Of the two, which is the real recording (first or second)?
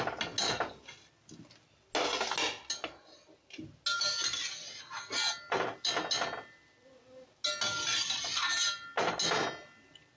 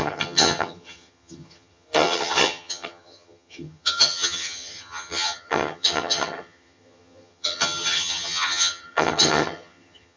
first